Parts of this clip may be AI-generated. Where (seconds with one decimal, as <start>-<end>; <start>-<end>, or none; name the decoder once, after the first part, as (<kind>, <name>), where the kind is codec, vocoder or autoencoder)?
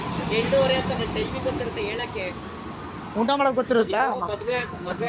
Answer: 3.8-5.1 (codec, SNAC)